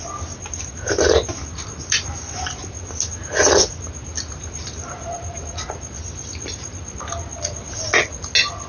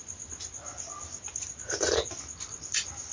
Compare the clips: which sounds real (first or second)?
first